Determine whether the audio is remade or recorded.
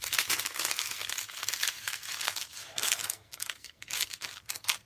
remade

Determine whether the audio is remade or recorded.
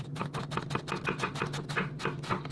recorded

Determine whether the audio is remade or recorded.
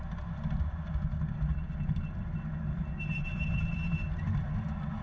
recorded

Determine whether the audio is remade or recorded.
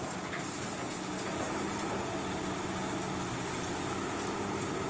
recorded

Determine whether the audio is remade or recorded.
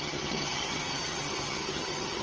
remade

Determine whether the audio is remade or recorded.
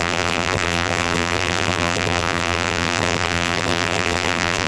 remade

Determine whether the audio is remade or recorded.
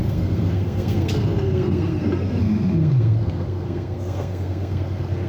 remade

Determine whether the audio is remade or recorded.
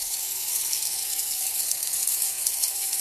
remade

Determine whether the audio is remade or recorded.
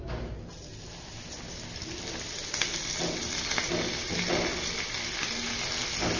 recorded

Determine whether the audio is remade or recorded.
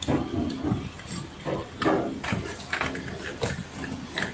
recorded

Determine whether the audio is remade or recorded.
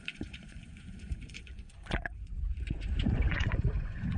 remade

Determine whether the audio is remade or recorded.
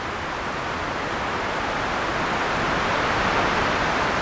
recorded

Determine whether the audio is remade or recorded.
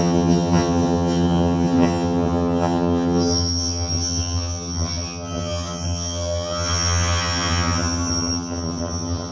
remade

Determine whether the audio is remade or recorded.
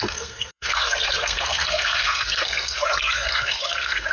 remade